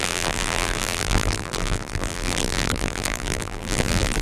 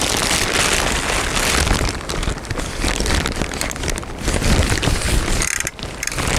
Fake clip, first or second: first